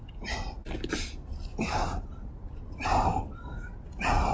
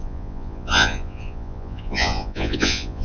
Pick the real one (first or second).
first